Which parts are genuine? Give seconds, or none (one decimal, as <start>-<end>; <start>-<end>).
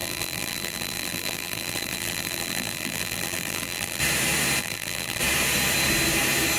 4.0-4.6; 5.2-6.6